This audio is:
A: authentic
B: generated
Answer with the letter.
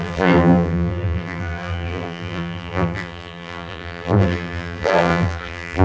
B